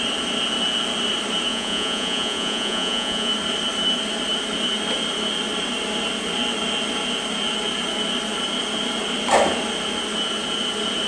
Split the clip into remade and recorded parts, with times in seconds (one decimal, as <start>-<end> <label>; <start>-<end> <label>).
0.0-1.5 recorded; 1.5-3.3 remade; 3.3-11.1 recorded

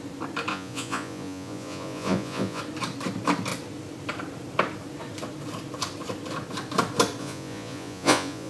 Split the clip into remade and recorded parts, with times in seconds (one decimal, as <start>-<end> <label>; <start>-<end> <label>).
0.0-0.5 recorded; 0.5-2.6 remade; 2.6-7.2 recorded; 7.2-8.5 remade

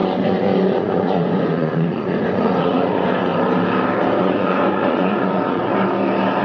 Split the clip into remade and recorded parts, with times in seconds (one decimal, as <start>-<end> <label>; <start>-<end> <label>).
0.0-3.3 remade; 3.3-4.2 recorded; 4.2-5.7 remade; 5.7-6.4 recorded

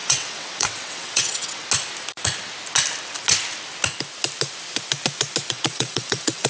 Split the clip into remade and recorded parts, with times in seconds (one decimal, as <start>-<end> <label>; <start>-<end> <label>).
0.0-1.6 remade; 1.6-5.5 recorded; 5.5-6.5 remade

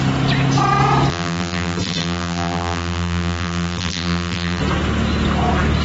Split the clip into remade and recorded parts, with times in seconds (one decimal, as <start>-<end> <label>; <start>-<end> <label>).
0.0-1.1 recorded; 1.1-4.6 remade; 4.6-5.8 recorded

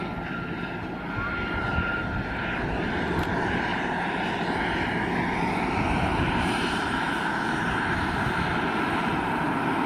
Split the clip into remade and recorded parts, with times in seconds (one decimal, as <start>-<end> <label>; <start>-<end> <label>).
0.0-3.7 recorded; 3.7-4.2 remade; 4.2-6.1 recorded; 6.1-8.3 remade; 8.3-9.9 recorded

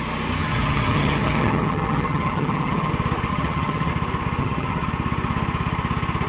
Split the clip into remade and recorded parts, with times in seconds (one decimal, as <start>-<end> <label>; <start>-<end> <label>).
0.0-0.4 recorded; 0.4-2.9 remade; 2.9-3.3 recorded; 3.3-3.9 remade; 3.9-4.4 recorded; 4.4-4.9 remade; 4.9-6.3 recorded

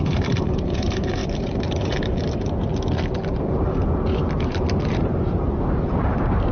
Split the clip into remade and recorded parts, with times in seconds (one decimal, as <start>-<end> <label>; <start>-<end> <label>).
0.0-2.7 remade; 2.7-4.1 recorded; 4.1-6.5 remade